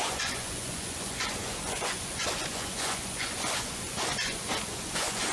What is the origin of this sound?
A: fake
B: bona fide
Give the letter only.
A